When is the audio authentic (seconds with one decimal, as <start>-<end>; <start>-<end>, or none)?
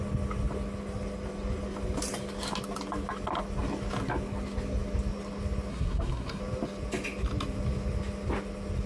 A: 0.0-5.7; 6.4-8.9